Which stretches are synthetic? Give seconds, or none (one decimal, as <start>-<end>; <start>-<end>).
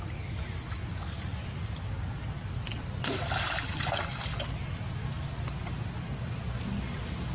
none